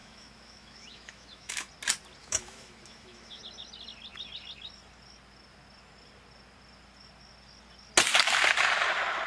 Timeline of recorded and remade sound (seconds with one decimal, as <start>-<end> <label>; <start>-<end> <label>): 0.0-1.7 remade; 1.7-2.2 recorded; 2.2-3.4 remade; 3.4-9.3 recorded